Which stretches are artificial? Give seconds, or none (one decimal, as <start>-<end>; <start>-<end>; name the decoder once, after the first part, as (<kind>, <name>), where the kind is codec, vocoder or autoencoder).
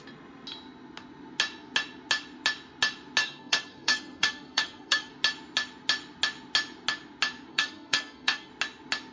3.2-5.1 (codec, SNAC); 7.5-8.5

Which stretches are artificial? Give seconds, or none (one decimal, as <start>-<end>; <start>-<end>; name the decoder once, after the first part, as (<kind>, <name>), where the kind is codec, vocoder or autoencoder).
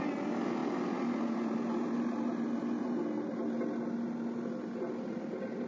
none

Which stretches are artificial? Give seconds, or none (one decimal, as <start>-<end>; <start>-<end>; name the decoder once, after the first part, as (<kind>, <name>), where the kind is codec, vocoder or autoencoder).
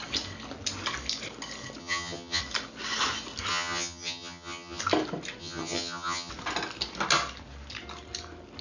1.8-2.4 (vocoder, HiFi-GAN); 3.5-4.8; 5.4-6.3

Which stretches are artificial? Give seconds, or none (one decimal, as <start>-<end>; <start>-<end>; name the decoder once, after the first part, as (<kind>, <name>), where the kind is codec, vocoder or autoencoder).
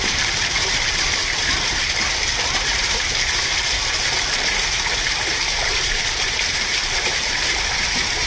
0.0-1.2 (vocoder, BigVGAN v2); 2.3-8.3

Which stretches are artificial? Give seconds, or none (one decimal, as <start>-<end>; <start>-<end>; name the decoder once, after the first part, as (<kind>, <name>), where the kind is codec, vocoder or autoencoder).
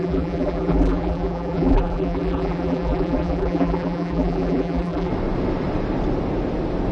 0.0-5.1 (vocoder, BigVGAN v2)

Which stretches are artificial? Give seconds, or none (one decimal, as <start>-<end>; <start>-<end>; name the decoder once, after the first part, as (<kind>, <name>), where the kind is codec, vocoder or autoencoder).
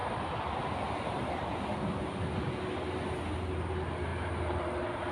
none